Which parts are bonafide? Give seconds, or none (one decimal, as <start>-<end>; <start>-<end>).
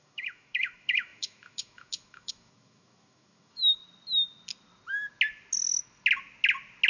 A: 3.8-6.9